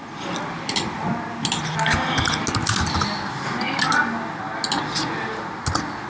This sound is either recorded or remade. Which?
recorded